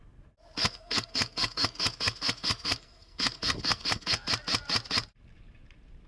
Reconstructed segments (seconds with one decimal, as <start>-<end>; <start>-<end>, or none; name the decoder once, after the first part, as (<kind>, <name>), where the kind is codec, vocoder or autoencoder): 0.6-4.3 (codec, SNAC)

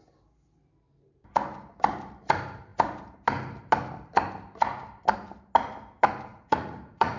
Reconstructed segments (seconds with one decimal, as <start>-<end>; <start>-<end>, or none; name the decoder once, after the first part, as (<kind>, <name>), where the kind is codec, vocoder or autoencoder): 6.3-7.2 (vocoder, Vocos)

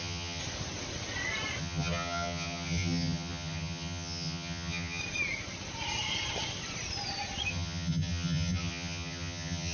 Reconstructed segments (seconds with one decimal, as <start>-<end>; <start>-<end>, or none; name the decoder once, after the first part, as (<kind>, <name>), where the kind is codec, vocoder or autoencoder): 0.0-0.4 (vocoder, HiFi-GAN); 1.6-5.0; 7.5-9.7

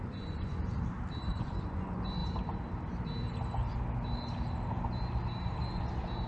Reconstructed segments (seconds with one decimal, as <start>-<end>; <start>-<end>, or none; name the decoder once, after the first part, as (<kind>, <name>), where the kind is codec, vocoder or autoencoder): 0.0-0.6 (vocoder, Vocos); 1.3-2.2

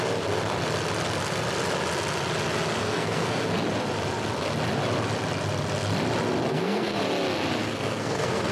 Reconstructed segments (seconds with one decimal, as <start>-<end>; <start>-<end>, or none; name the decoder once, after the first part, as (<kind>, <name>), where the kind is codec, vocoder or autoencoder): 2.8-3.4 (codec, SNAC); 6.5-7.0; 7.6-8.5

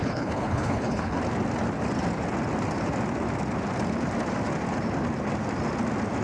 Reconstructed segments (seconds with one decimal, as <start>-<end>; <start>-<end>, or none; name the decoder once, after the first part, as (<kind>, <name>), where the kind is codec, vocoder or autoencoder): 0.0-1.2 (codec, HILCodec)

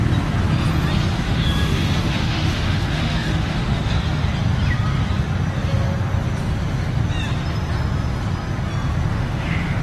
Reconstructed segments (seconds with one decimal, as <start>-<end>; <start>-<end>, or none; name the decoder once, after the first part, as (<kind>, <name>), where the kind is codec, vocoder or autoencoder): 1.1-3.9 (autoencoder, DAC-VAE); 9.1-9.8

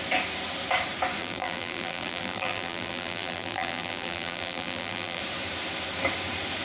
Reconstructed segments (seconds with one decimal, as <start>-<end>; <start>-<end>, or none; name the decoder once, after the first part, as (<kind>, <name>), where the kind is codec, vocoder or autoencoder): 1.2-5.2 (vocoder, BigVGAN v2)